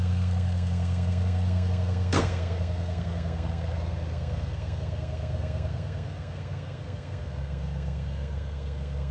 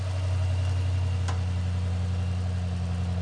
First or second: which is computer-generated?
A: first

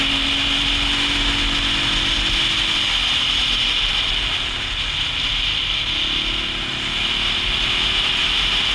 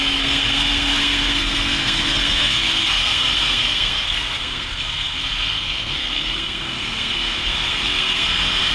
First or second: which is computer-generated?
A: second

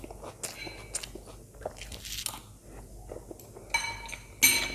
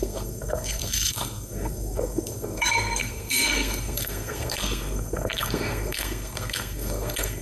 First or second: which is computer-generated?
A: second